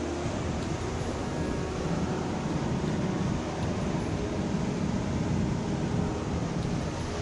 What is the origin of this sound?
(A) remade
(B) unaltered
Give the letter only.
B